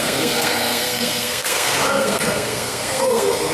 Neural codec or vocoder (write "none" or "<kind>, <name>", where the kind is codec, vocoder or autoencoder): codec, SNAC